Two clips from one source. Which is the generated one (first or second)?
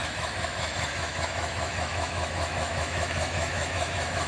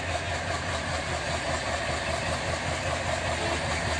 first